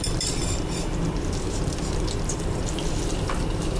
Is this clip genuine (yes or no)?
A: no